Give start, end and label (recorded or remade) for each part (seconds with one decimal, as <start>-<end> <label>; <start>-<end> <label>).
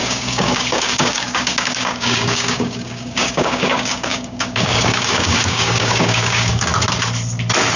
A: 0.0-6.7 remade; 6.7-7.8 recorded